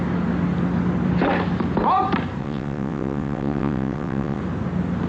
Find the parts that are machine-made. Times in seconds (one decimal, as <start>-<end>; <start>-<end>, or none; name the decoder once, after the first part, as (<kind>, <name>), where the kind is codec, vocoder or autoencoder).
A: 2.4-4.4 (vocoder, WaveNeXt)